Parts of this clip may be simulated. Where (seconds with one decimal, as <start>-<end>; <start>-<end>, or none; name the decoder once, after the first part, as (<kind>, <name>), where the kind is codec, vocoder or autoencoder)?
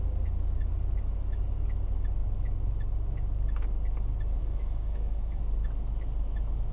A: 4.4-5.4 (codec, SNAC)